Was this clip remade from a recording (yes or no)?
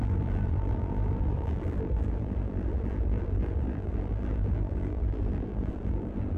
yes